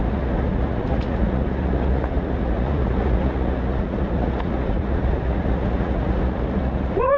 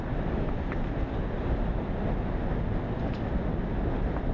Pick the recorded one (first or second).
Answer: second